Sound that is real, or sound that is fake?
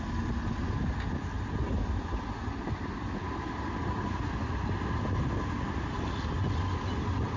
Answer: real